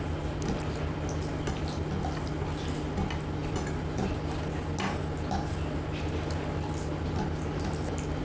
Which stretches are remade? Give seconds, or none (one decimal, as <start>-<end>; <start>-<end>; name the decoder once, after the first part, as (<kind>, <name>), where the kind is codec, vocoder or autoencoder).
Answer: none